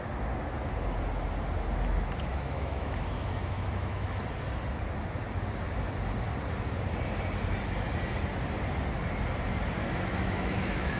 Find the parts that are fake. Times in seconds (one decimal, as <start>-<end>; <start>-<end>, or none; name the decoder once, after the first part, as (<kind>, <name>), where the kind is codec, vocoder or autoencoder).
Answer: 2.3-4.2 (autoencoder, DAC-VAE); 9.8-11.0